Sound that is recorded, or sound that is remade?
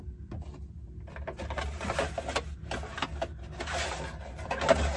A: recorded